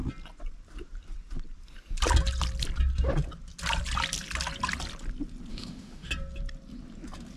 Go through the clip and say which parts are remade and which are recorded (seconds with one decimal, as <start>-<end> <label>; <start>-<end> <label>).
0.0-5.5 recorded; 5.5-6.1 remade; 6.1-7.4 recorded